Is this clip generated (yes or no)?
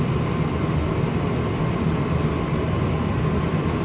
no